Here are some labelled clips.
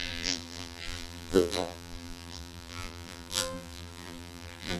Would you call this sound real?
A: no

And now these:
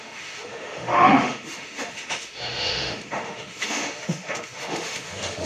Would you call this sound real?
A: no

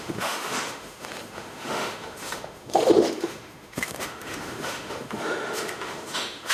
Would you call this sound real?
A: no